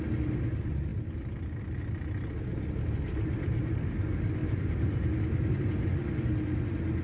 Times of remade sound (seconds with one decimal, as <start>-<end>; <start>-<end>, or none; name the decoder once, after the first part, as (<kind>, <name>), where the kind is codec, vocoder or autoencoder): 2.5-3.7 (vocoder, BigVGAN v2); 4.4-5.6